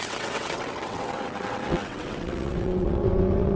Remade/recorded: remade